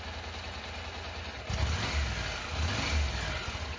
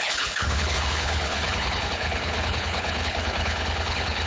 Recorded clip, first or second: first